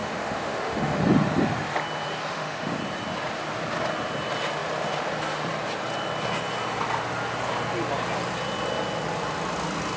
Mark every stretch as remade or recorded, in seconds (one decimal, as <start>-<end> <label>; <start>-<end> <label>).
0.0-1.0 remade; 1.0-2.3 recorded; 2.3-2.8 remade; 2.8-10.0 recorded